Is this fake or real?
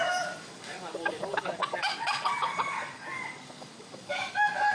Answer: fake